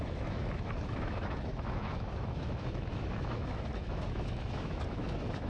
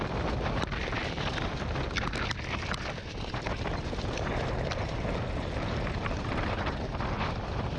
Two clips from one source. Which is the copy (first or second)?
first